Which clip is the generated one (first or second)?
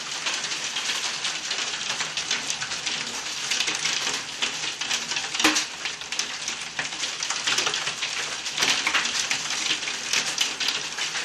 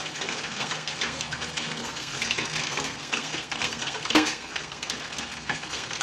second